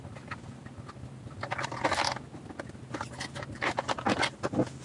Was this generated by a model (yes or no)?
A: no